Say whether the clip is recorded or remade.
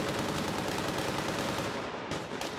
recorded